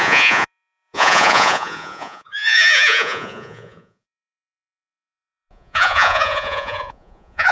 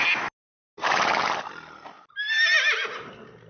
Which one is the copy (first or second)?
first